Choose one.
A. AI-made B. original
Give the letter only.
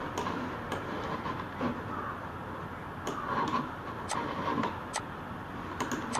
B